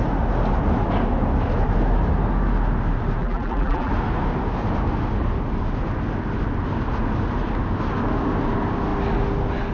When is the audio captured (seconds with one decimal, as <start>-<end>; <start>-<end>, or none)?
0.0-3.2; 3.9-9.7